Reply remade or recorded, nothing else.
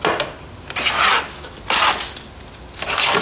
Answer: recorded